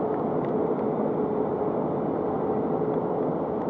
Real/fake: real